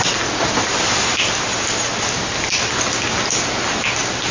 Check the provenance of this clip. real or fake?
real